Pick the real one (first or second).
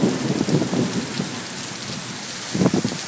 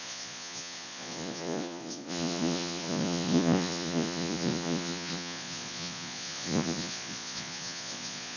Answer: first